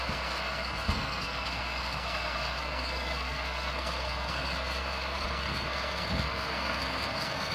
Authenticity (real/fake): fake